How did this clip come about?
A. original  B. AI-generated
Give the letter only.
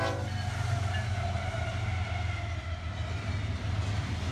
A